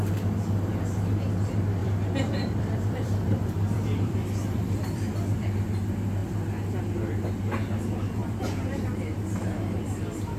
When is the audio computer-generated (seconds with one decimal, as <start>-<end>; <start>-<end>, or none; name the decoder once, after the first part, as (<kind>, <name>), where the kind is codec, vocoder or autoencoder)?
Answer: 1.8-5.6 (vocoder, BigVGAN v2); 8.2-8.9